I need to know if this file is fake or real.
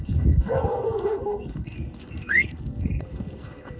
fake